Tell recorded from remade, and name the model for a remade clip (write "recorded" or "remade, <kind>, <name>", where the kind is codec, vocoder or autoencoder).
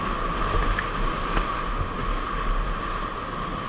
recorded